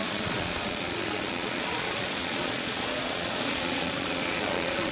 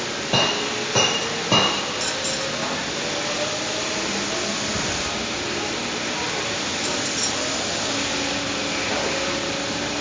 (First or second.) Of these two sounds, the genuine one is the second